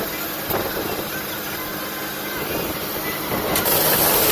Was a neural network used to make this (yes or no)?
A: no